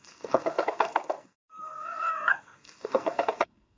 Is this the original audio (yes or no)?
no